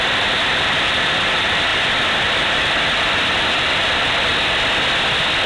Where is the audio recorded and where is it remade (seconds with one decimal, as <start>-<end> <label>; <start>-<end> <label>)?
0.0-4.3 remade; 4.3-5.5 recorded